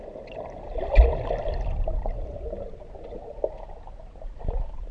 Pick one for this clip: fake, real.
real